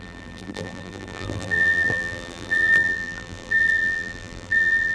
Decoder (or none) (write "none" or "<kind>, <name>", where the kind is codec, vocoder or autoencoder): vocoder, BigVGAN v2